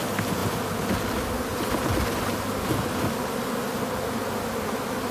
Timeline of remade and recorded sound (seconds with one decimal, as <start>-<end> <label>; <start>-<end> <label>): 0.0-5.1 recorded